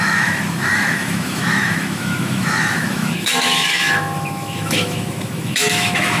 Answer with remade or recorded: remade